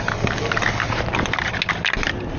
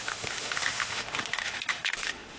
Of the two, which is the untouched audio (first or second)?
first